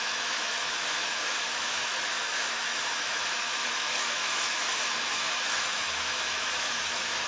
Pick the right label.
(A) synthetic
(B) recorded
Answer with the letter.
A